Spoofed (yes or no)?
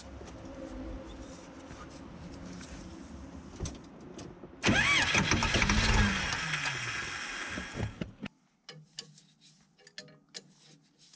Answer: no